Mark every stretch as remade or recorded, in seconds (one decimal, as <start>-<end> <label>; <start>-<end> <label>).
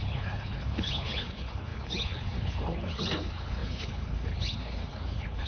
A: 0.0-5.5 remade